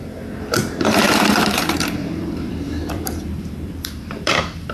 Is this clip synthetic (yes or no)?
yes